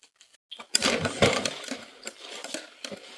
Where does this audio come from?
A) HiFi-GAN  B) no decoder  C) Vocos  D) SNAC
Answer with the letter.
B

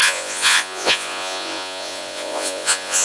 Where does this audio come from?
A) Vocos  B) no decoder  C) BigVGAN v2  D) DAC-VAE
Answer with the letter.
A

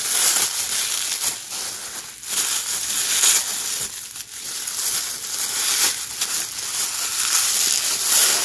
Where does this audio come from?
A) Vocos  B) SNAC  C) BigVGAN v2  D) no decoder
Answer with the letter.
D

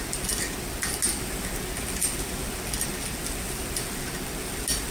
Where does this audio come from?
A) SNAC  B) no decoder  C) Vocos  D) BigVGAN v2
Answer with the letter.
B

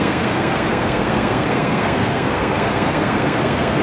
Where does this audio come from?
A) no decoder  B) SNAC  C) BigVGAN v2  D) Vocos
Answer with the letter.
B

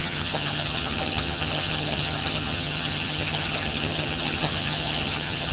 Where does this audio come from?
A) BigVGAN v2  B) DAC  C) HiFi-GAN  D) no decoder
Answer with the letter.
C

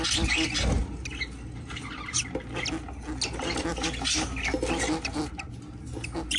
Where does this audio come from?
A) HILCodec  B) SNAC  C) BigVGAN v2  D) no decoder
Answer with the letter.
D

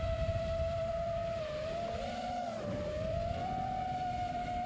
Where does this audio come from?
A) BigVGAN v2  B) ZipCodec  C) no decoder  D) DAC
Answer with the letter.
A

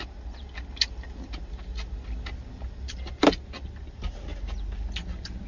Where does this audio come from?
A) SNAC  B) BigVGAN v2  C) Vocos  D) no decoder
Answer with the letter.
D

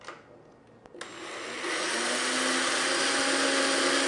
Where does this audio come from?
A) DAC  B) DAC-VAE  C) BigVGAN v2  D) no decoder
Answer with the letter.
D